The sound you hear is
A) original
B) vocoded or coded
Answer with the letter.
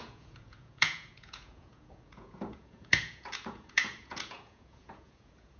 B